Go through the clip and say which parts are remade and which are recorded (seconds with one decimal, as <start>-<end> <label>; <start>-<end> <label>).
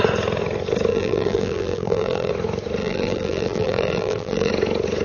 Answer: 0.0-0.9 recorded; 0.9-2.3 remade; 2.3-2.8 recorded; 2.8-4.5 remade; 4.5-5.0 recorded